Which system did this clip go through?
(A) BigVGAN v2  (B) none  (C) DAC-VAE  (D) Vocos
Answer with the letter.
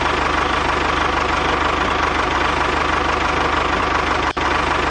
B